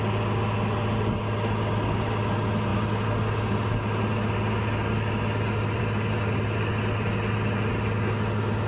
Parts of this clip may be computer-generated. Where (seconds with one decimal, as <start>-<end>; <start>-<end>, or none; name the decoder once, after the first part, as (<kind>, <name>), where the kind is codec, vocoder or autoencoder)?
none

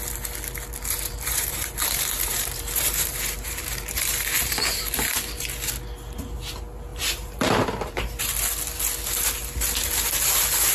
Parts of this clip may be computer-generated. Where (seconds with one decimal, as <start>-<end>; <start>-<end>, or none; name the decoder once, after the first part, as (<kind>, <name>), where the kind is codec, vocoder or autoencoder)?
0.8-5.1 (vocoder, BigVGAN v2); 6.9-8.2